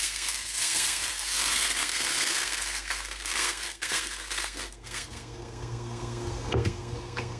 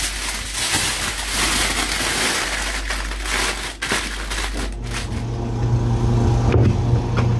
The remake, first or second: first